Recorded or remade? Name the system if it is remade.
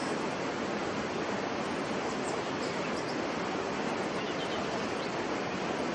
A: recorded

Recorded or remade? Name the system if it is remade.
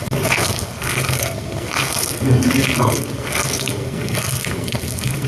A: remade, codec, SNAC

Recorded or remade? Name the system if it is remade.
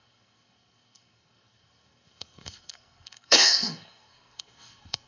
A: remade, codec, SNAC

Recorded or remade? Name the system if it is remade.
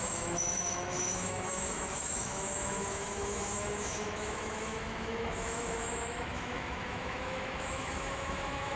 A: remade, autoencoder, DAC-VAE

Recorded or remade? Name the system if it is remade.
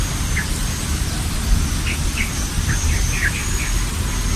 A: recorded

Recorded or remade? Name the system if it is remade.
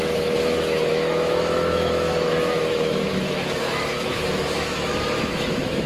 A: remade, autoencoder, DAC-VAE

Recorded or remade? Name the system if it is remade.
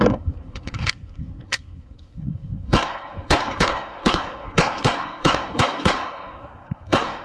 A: remade, codec, SNAC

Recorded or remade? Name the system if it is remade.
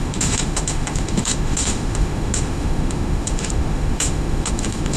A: remade, autoencoder, DAC-VAE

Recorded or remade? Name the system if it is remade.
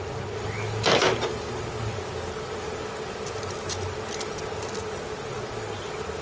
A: recorded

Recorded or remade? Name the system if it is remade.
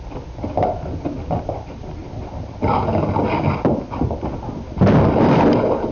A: remade, vocoder, BigVGAN v2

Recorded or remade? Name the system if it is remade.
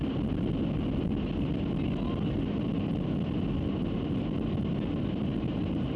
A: recorded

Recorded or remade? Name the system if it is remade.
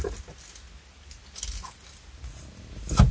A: recorded